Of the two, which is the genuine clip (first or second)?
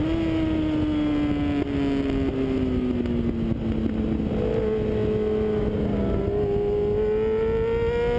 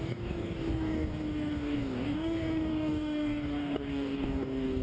first